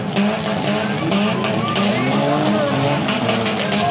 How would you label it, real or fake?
real